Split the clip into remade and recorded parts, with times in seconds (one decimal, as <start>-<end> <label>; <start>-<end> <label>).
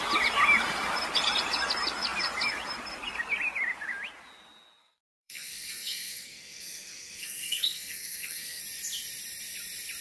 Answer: 0.0-4.8 recorded; 4.8-8.6 remade; 8.6-10.0 recorded